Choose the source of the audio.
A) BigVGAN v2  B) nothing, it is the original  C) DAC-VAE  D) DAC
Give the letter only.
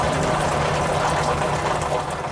B